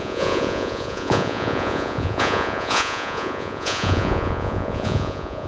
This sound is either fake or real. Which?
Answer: fake